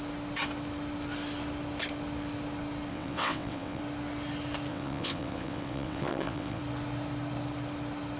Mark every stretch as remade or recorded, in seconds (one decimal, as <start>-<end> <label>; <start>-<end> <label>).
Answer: 0.0-2.9 recorded; 2.9-3.8 remade; 3.8-4.7 recorded; 4.7-6.6 remade; 6.6-8.2 recorded